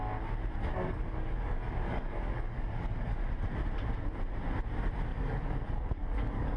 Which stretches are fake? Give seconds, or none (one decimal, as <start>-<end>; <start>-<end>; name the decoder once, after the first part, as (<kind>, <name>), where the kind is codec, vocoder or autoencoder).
0.7-3.2 (codec, DAC); 5.1-6.6